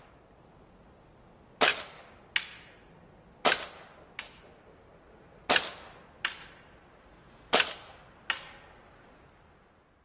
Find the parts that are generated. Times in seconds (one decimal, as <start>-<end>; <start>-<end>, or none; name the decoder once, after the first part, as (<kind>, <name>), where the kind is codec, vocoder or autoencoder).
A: none